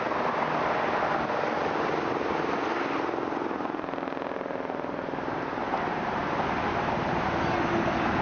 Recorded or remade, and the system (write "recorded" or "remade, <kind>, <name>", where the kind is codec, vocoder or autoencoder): recorded